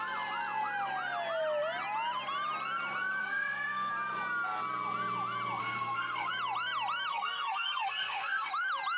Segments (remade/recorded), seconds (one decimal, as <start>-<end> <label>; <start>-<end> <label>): 0.0-3.2 recorded; 3.2-3.9 remade; 3.9-5.6 recorded; 5.6-6.3 remade; 6.3-7.1 recorded; 7.1-8.5 remade; 8.5-9.0 recorded